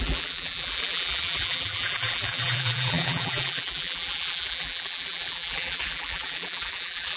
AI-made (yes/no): yes